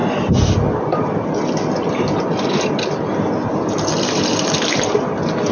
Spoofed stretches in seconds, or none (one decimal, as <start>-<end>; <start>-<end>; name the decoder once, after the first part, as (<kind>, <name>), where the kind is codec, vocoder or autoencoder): none

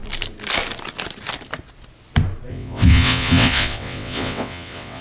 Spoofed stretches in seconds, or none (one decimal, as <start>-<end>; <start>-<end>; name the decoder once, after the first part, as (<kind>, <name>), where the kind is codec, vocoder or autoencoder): 2.5-5.0 (vocoder, WaveNeXt)

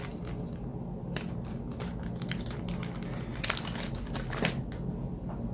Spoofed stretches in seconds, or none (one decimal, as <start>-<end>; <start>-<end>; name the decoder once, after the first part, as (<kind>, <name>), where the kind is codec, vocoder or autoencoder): none

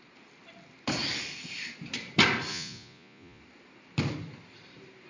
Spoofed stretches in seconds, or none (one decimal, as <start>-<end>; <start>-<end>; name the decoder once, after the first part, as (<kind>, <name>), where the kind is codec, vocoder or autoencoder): 2.5-3.4 (vocoder, Vocos)

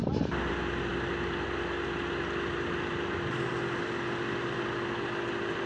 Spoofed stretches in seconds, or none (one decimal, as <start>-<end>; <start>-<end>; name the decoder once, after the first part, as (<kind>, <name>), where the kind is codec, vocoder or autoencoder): none

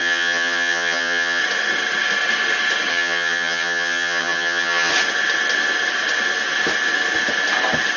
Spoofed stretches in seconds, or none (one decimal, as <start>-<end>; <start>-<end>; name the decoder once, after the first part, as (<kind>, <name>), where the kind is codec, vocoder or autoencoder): 0.0-1.4 (vocoder, HiFi-GAN); 2.9-4.9

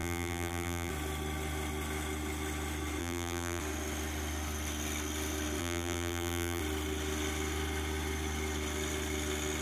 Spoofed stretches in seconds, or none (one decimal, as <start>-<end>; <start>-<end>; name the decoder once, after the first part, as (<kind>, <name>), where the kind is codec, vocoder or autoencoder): 0.0-0.9 (vocoder, BigVGAN v2); 3.0-3.6; 5.6-6.6

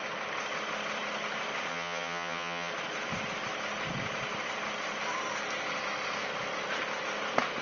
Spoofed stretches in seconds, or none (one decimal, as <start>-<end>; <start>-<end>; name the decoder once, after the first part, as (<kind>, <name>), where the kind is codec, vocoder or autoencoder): 1.7-2.7 (vocoder, HiFi-GAN)